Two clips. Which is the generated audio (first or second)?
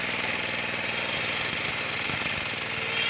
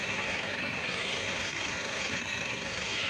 second